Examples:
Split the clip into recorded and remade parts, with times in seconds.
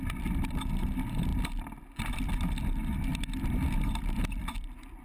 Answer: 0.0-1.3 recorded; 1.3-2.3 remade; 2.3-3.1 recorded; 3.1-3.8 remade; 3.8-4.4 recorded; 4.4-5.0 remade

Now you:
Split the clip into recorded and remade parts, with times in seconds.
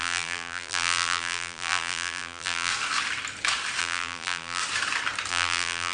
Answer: 0.0-2.7 remade; 2.7-3.8 recorded; 3.8-4.6 remade; 4.6-5.3 recorded; 5.3-5.9 remade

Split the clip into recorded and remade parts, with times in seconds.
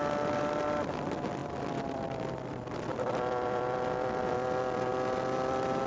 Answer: 0.0-1.4 recorded; 1.4-4.9 remade; 4.9-5.9 recorded